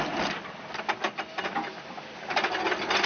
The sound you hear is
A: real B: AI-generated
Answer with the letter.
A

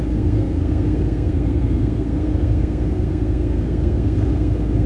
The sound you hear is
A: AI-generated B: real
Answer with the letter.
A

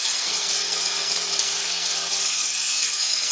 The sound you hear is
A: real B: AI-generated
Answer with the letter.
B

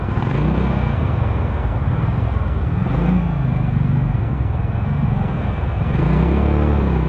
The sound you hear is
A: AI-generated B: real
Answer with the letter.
A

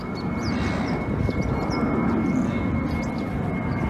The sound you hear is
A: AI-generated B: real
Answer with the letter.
B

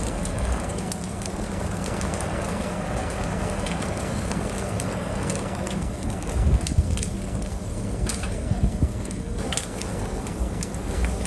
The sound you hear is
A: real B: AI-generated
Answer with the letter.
B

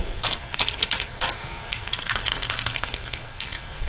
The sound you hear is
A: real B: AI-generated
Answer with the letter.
B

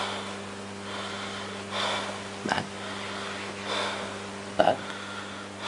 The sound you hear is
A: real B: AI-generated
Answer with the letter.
A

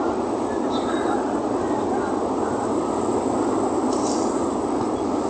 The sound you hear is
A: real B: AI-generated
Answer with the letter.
A